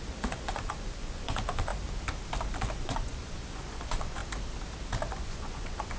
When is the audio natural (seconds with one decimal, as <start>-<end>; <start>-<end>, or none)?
1.7-2.8; 4.2-5.1